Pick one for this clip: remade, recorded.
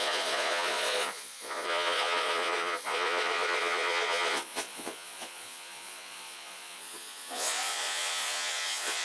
remade